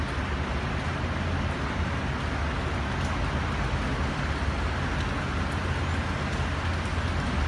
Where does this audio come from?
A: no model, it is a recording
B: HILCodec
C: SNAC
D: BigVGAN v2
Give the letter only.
A